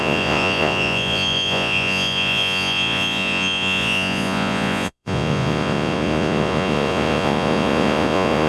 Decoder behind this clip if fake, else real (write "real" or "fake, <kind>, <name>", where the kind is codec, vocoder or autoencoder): fake, vocoder, Vocos